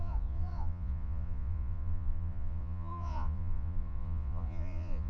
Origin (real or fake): fake